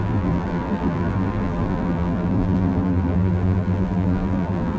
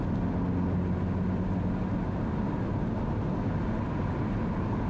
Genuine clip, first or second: second